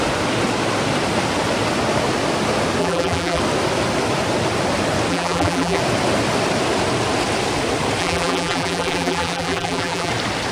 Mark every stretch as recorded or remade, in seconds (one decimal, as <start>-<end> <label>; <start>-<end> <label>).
0.0-2.8 recorded; 2.8-3.4 remade; 3.4-5.1 recorded; 5.1-5.8 remade; 5.8-8.0 recorded; 8.0-10.1 remade; 10.1-10.5 recorded